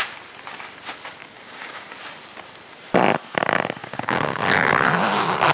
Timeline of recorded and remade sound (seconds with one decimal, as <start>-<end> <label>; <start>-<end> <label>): 0.0-1.2 recorded; 1.2-1.9 remade; 1.9-3.8 recorded; 3.8-4.4 remade; 4.4-5.5 recorded

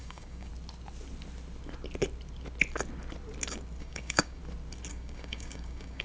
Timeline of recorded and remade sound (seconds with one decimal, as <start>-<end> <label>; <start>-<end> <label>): 0.0-0.5 remade; 0.5-3.8 recorded; 3.8-4.4 remade; 4.4-4.9 recorded; 4.9-6.0 remade

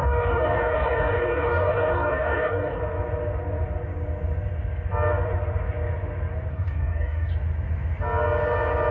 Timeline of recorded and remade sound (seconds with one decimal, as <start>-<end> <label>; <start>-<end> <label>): 0.0-2.8 remade; 2.8-6.5 recorded; 6.5-7.3 remade; 7.3-8.9 recorded

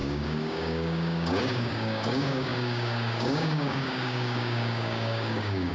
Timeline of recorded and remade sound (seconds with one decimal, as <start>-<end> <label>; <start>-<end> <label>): 0.0-5.7 remade

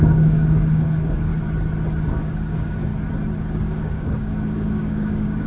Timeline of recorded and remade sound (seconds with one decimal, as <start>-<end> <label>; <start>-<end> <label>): 0.0-1.3 remade; 1.3-2.1 recorded; 2.1-2.9 remade; 2.9-3.5 recorded; 3.5-5.5 remade